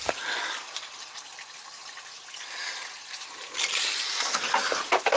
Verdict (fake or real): real